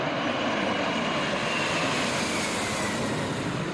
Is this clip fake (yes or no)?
no